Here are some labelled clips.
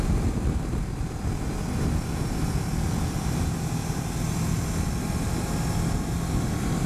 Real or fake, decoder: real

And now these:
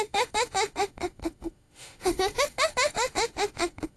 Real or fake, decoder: fake, autoencoder, DAC-VAE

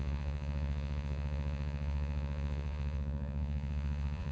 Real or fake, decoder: fake, vocoder, Vocos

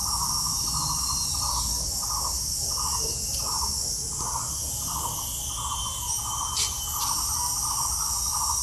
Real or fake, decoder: real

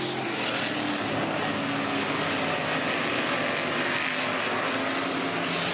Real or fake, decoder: real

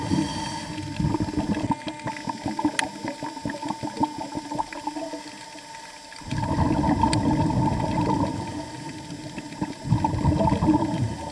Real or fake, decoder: real